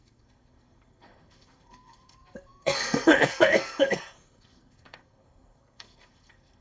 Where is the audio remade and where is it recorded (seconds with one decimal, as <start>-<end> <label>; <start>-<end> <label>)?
0.0-6.6 remade